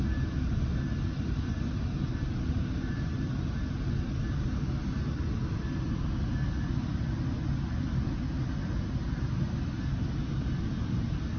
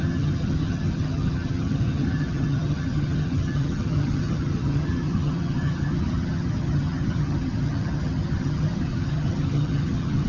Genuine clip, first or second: first